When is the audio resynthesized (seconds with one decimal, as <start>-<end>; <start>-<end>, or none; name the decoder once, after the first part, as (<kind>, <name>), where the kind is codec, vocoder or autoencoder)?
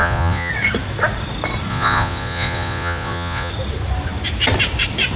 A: 0.0-0.5 (vocoder, Vocos); 1.7-3.5